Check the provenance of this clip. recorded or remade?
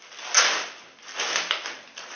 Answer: recorded